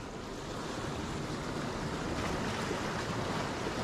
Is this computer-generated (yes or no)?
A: no